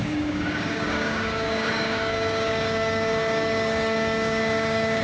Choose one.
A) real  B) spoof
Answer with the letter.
B